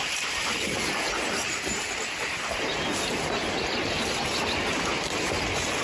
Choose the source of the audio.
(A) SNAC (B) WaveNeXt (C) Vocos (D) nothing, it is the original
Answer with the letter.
D